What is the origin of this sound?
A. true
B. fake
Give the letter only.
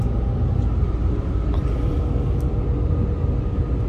A